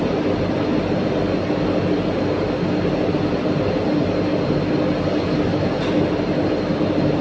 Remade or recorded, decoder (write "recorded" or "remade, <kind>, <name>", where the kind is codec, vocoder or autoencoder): recorded